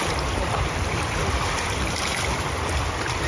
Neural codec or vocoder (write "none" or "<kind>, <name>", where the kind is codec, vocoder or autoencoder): none